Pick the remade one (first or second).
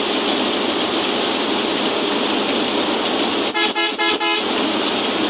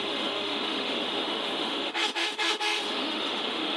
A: second